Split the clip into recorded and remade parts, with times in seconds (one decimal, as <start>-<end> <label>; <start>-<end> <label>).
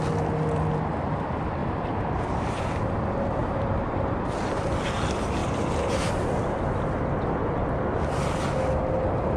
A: 0.0-1.6 recorded; 1.6-2.6 remade; 2.6-3.4 recorded; 3.4-4.7 remade; 4.7-5.4 recorded; 5.4-6.1 remade; 6.1-9.4 recorded